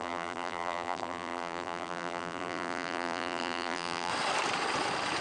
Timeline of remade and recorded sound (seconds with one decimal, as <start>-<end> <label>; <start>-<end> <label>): 0.0-4.1 remade; 4.1-5.2 recorded